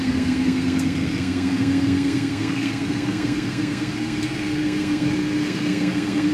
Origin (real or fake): fake